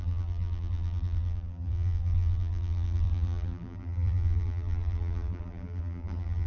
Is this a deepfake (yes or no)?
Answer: yes